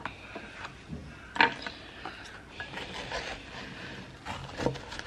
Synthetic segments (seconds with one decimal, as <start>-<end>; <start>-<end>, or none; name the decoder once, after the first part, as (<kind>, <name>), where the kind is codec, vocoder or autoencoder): none